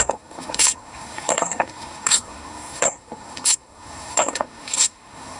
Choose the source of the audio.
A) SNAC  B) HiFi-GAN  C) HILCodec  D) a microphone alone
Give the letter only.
A